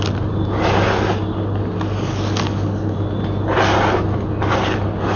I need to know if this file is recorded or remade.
recorded